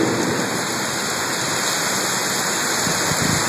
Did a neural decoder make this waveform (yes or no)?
no